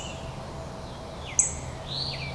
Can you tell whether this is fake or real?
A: real